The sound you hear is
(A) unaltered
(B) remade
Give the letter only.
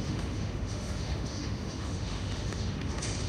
B